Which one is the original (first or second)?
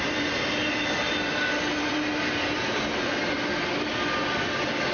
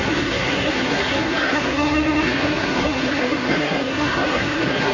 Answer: first